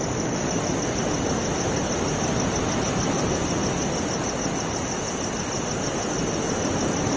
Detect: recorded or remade recorded